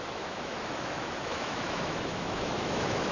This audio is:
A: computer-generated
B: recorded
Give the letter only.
A